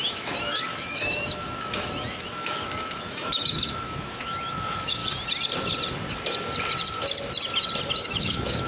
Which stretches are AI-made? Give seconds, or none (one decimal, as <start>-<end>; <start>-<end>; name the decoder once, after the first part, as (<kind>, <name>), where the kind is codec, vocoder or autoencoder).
0.0-5.0 (autoencoder, DAC-VAE); 7.9-8.7